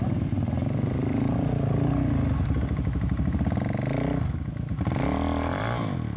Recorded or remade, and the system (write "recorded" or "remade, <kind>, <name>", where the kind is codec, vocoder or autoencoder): recorded